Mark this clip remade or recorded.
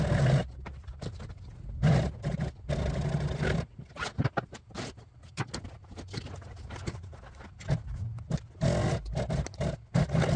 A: recorded